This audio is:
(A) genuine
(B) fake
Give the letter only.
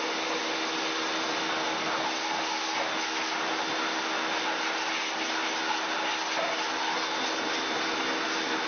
A